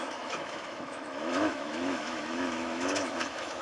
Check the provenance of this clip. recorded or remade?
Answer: remade